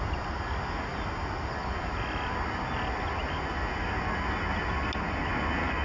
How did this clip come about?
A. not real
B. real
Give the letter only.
B